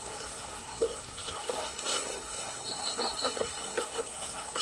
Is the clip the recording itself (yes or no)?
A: no